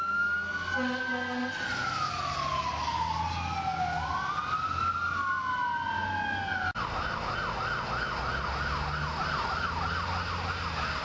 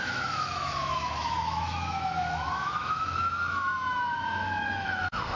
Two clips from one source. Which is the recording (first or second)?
first